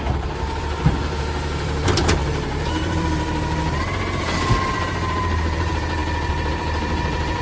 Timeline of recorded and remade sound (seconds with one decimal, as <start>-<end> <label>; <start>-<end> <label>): 0.0-7.4 remade